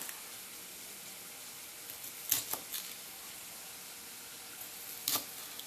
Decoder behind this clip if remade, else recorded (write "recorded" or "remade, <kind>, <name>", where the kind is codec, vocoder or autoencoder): recorded